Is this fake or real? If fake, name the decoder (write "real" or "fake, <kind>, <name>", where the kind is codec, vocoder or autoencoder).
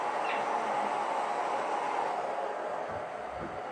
real